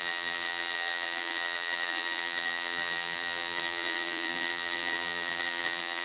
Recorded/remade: remade